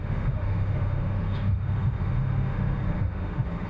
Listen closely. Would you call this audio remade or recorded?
remade